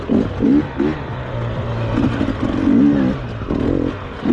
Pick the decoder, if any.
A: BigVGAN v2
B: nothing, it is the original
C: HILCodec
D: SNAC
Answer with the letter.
B